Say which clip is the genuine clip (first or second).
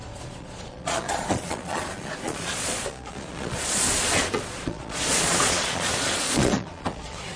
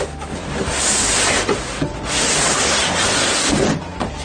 second